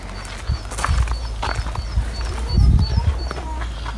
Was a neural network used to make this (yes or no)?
no